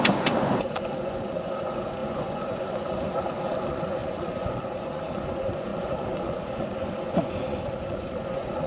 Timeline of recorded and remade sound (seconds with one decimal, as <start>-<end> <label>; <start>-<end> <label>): 0.0-8.7 remade